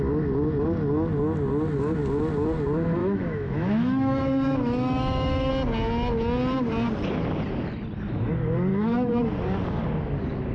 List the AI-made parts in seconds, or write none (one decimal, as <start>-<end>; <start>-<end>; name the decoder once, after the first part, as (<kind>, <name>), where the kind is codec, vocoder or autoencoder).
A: 3.0-5.5 (autoencoder, DAC-VAE); 8.7-9.2